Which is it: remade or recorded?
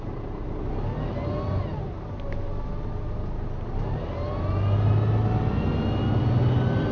recorded